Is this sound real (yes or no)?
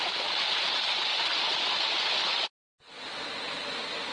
yes